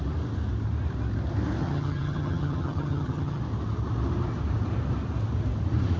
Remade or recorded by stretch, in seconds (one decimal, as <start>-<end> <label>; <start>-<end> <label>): 0.0-1.6 recorded; 1.6-3.4 remade; 3.4-6.0 recorded